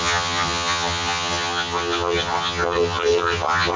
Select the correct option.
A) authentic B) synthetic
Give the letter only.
B